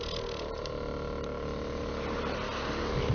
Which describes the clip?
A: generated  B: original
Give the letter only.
B